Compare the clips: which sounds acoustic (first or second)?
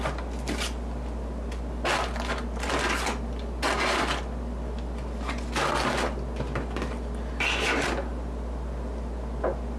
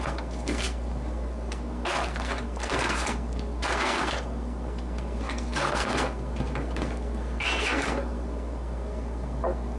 first